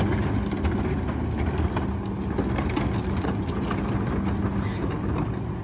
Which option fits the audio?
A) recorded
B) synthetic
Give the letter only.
A